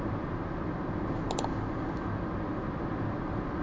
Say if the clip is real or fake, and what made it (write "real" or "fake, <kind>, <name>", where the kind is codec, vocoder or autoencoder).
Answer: real